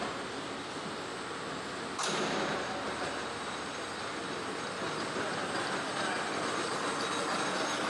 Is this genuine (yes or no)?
yes